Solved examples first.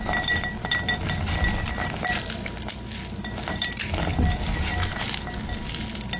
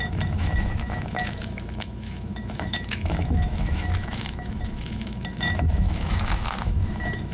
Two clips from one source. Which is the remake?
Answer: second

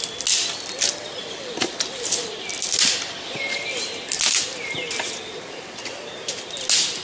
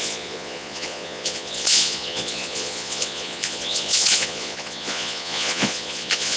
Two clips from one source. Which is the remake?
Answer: second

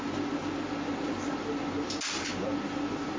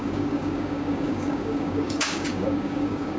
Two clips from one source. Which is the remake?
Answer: second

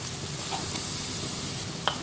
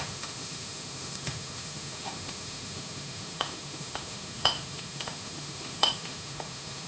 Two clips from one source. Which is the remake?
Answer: second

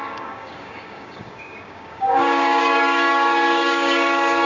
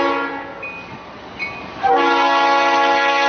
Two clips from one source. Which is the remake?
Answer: first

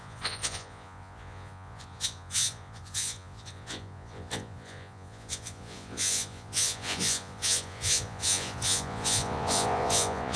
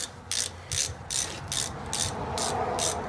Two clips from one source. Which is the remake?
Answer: first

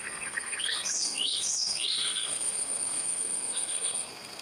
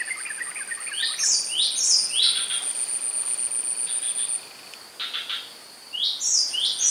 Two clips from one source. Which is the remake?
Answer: first